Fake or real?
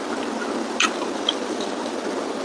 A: real